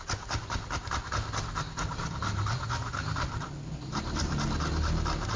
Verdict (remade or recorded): recorded